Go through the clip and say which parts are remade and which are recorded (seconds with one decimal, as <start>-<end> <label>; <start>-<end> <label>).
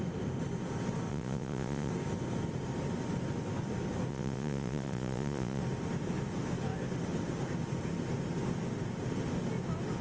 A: 0.0-1.1 recorded; 1.1-1.9 remade; 1.9-4.1 recorded; 4.1-5.6 remade; 5.6-10.0 recorded